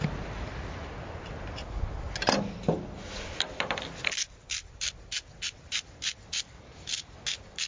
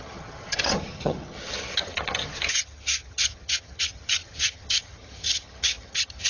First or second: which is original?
first